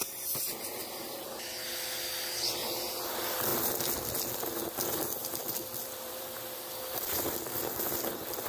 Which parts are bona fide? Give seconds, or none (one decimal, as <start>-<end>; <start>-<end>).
0.0-5.2; 7.7-8.5